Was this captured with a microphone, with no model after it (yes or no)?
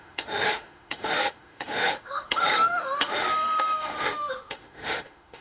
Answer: no